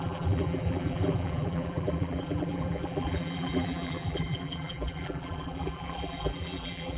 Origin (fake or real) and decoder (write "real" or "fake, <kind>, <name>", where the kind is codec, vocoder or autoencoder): fake, vocoder, BigVGAN v2